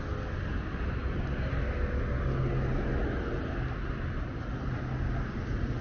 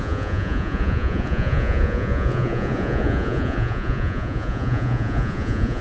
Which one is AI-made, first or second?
second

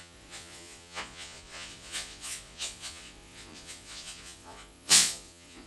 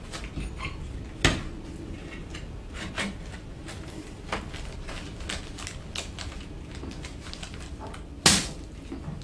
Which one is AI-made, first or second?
first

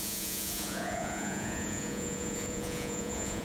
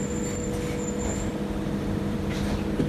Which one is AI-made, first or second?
first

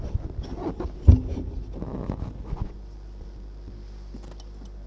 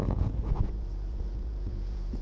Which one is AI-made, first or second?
second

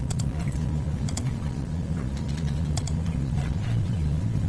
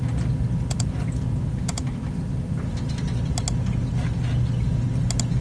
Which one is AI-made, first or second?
first